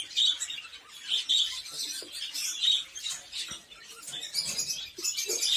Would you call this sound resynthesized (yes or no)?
no